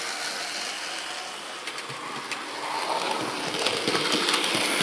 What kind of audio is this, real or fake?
real